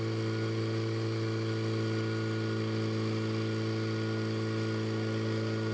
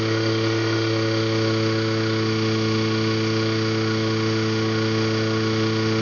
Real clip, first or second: first